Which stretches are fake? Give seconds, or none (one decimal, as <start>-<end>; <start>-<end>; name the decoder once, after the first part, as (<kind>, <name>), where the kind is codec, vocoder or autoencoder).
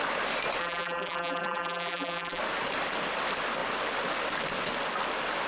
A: 0.6-2.4 (vocoder, BigVGAN v2)